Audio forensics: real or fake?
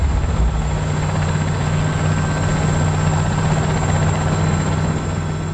real